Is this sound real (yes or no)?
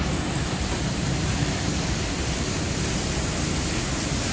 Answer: yes